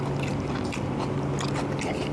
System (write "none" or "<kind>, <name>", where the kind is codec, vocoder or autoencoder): none